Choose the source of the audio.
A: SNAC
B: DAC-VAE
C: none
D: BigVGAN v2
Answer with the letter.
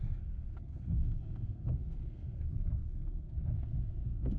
A